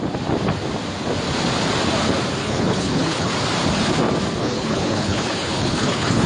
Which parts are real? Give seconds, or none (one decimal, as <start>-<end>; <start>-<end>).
0.0-2.4; 3.3-4.4